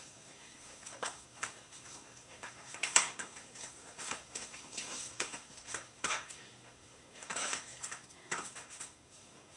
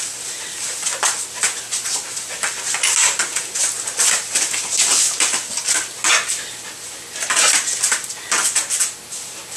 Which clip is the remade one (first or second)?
first